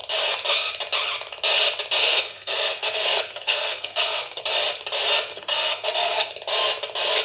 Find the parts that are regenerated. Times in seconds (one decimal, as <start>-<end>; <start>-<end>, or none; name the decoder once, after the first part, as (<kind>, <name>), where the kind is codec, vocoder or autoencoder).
2.0-4.4 (codec, SNAC); 5.3-6.3